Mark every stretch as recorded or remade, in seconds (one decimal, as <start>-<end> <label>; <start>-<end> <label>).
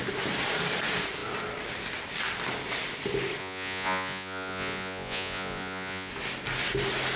0.0-3.4 recorded; 3.4-6.1 remade; 6.1-7.2 recorded